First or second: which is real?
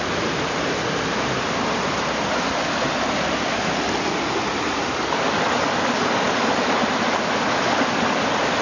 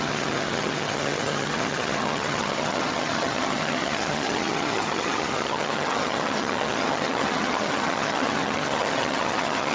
first